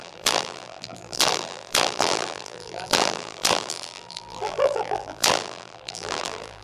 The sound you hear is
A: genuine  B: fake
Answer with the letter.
B